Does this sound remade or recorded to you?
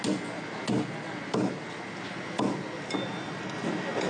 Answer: recorded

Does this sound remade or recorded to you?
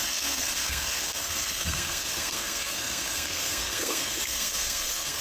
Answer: remade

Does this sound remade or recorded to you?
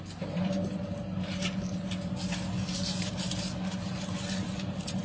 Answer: recorded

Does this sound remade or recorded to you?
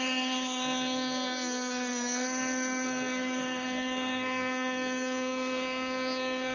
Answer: remade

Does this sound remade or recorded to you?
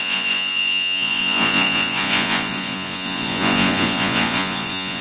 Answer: remade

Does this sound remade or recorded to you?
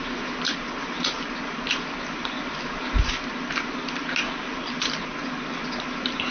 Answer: recorded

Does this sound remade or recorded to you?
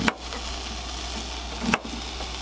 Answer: recorded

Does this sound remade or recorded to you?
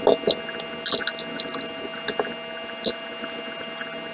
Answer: recorded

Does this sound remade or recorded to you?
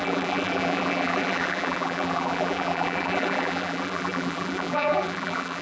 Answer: remade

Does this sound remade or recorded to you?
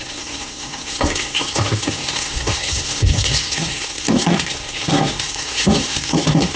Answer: remade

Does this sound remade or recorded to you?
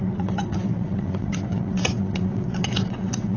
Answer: remade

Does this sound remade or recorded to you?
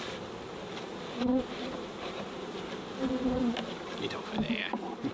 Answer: remade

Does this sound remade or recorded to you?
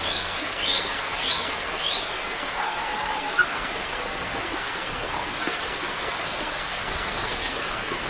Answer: remade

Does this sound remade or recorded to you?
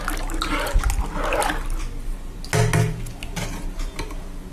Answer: recorded